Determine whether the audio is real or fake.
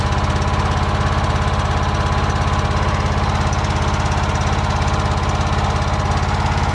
real